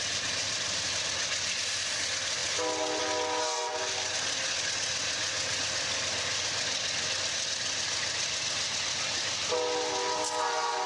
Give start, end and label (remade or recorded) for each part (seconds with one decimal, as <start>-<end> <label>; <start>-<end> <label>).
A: 0.0-10.9 recorded